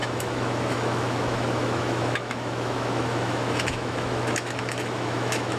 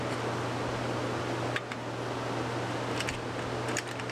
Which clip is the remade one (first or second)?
first